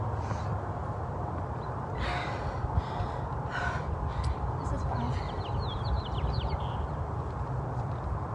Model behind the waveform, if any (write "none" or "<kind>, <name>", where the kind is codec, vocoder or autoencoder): none